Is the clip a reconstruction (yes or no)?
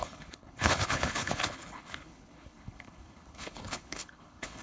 yes